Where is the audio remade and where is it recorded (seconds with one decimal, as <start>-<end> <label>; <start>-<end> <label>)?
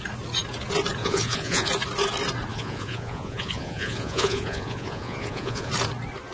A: 0.0-1.0 recorded; 1.0-1.7 remade; 1.7-2.5 recorded; 2.5-5.7 remade; 5.7-6.3 recorded